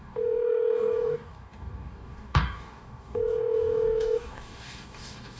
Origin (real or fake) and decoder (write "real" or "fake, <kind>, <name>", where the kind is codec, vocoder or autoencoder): fake, codec, DAC